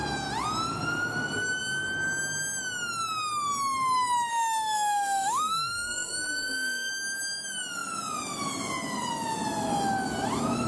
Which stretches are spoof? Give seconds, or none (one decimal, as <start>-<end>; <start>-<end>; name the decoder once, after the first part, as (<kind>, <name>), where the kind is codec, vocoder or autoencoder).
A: 4.3-6.9 (autoencoder, DAC-VAE)